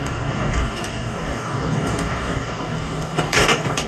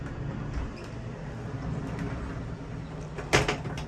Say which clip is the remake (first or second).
first